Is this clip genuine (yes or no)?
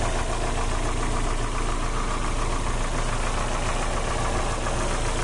yes